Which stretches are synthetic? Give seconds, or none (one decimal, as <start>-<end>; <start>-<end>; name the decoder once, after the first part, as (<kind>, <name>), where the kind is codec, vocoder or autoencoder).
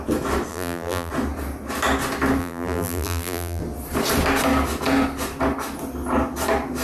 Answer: 0.5-1.1 (vocoder, BigVGAN v2); 2.4-3.6